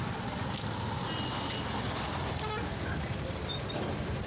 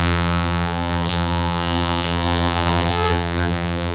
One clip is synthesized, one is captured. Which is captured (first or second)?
first